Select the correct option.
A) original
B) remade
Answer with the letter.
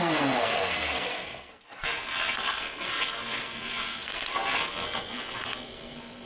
B